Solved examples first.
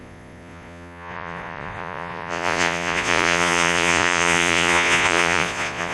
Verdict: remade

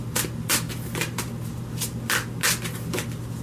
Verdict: recorded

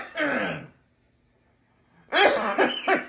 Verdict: recorded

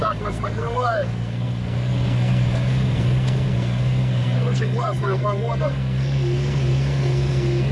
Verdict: remade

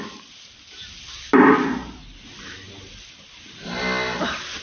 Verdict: recorded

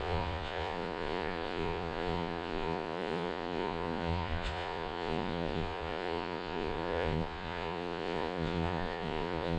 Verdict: remade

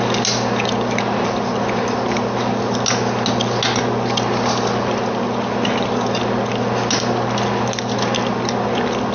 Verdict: recorded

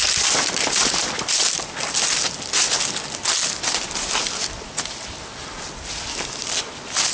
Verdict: recorded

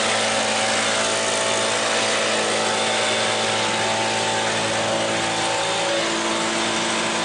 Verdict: recorded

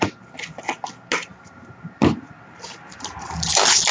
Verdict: recorded